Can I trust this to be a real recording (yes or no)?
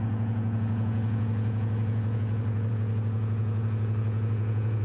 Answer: no